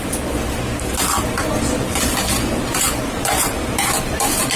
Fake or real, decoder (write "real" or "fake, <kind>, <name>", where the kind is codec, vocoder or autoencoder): real